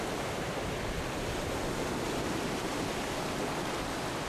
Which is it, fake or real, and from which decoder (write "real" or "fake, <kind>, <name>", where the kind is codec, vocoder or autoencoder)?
real